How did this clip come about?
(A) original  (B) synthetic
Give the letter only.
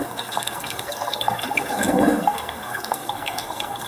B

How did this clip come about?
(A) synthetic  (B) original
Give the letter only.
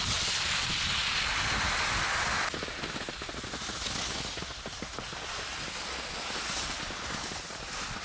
B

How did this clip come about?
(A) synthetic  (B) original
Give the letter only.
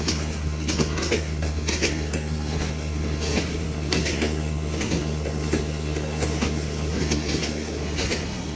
A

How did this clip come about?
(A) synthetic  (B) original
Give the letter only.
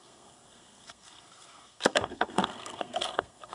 A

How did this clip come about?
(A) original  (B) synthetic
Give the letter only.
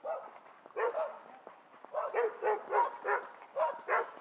A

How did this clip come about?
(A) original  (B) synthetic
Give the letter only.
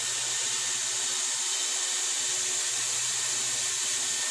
A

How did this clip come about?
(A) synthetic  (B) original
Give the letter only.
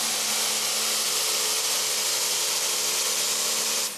B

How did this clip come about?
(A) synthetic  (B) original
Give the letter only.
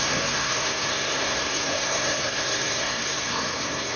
A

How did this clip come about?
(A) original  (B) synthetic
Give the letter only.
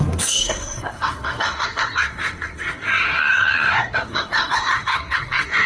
B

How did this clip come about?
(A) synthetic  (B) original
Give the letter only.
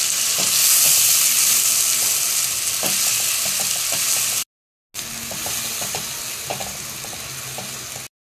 B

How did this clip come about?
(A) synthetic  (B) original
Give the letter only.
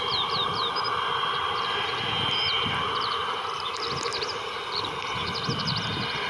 B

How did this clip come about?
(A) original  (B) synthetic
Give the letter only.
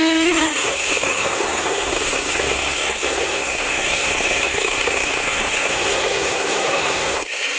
B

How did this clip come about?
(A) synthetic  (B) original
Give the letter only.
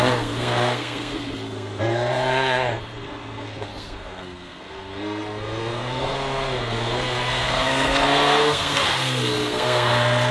A